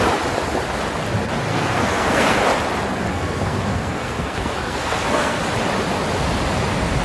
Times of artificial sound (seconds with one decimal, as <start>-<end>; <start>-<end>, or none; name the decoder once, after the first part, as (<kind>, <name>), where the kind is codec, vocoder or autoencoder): 1.5-2.4 (codec, SNAC); 3.1-5.4